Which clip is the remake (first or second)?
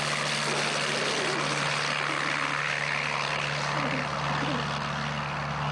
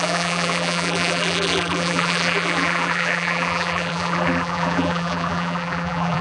second